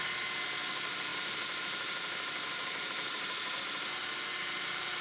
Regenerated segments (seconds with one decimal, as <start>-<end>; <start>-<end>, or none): 1.1-3.6; 4.0-5.0